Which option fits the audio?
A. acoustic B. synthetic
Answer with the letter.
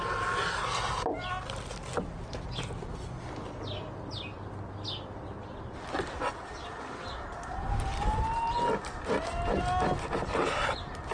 A